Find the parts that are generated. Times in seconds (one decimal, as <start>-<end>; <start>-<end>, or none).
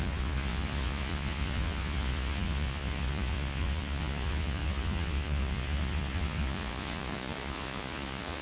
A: 0.0-8.4